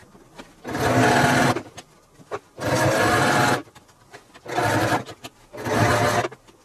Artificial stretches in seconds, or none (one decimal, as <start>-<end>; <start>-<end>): none

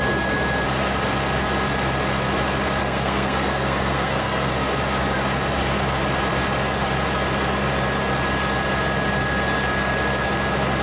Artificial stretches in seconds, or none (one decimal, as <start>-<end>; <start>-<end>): 2.8-4.5

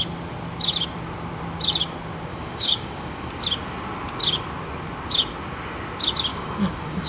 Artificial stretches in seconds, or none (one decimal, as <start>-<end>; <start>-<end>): 2.3-3.3; 6.3-7.1